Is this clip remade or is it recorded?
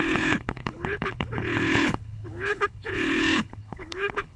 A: remade